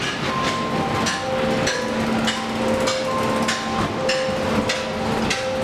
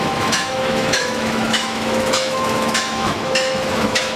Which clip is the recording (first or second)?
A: first